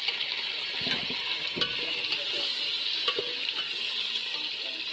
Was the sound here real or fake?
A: real